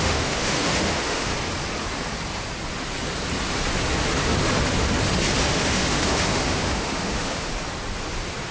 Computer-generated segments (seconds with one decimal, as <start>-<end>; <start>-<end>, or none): 0.0-1.3; 5.4-7.5

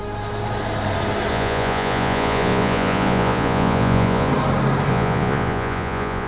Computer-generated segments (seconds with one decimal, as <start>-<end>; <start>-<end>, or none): 1.3-4.3; 4.9-6.3

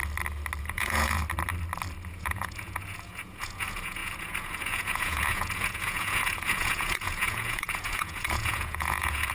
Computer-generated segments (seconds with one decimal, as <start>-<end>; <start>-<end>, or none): 0.6-1.2; 2.1-9.3

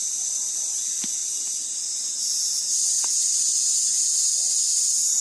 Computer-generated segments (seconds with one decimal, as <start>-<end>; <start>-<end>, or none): none

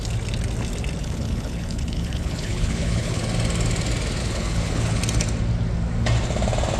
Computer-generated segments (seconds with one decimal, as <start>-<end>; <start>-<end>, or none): 1.0-3.2; 4.2-5.0